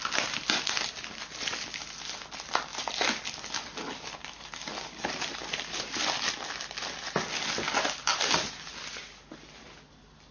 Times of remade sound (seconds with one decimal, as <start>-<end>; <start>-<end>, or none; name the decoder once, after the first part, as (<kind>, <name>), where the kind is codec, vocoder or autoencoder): 5.4-6.0 (vocoder, BigVGAN v2)